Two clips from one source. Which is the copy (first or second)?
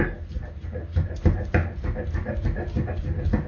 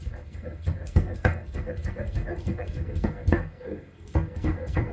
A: second